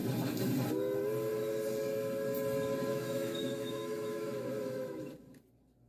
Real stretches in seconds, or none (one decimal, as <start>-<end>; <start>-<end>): 0.0-2.9; 5.0-5.9